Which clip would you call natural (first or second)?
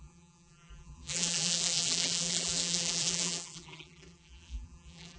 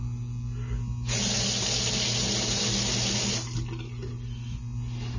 second